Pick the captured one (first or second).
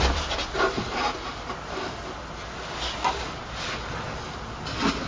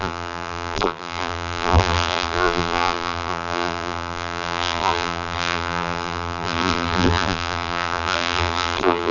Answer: first